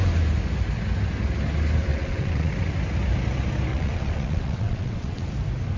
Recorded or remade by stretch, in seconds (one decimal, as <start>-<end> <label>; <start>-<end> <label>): 0.0-1.9 recorded; 1.9-2.5 remade; 2.5-3.7 recorded; 3.7-5.3 remade; 5.3-5.8 recorded

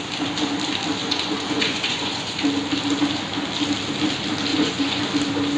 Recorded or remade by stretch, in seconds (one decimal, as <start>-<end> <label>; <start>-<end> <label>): 0.0-1.0 recorded; 1.0-2.4 remade; 2.4-4.5 recorded; 4.5-5.0 remade; 5.0-5.6 recorded

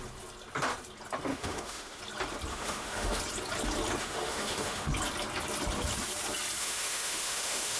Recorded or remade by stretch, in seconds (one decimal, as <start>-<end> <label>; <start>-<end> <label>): 0.0-1.3 recorded; 1.3-2.0 remade; 2.0-2.5 recorded; 2.5-3.2 remade; 3.2-4.0 recorded; 4.0-4.9 remade; 4.9-6.6 recorded; 6.6-7.8 remade

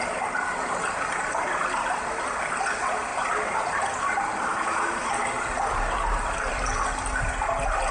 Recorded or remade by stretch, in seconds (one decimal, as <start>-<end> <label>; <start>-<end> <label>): 0.0-4.5 recorded; 4.5-5.1 remade; 5.1-7.9 recorded